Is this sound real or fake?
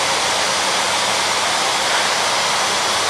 real